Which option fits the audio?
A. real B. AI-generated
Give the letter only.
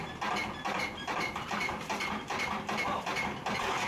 A